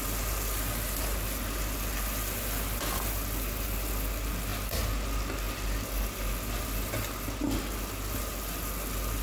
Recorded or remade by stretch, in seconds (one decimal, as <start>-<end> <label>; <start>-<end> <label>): 0.0-9.2 recorded